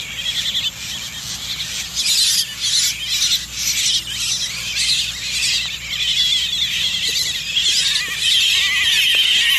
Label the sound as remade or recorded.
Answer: recorded